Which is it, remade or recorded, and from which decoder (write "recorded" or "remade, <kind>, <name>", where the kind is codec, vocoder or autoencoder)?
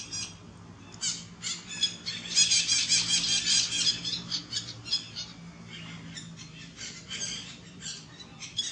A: recorded